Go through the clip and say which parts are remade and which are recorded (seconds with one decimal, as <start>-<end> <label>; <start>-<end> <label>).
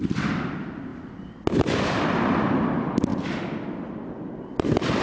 0.0-5.0 recorded